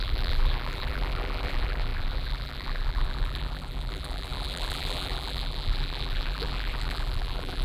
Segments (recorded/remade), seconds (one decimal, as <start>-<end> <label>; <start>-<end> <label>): 0.0-7.6 remade